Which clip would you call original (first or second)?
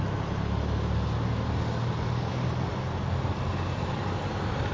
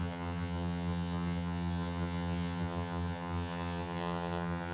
first